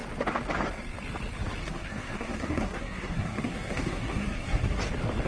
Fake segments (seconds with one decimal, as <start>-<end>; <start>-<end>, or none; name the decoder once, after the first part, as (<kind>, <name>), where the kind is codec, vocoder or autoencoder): 1.6-4.8 (codec, SNAC)